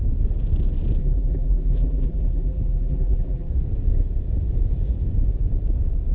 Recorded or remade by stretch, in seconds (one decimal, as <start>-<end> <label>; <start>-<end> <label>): 0.0-1.0 recorded; 1.0-3.5 remade; 3.5-6.1 recorded